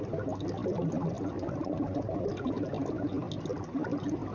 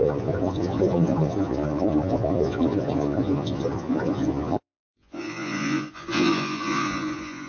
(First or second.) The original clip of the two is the first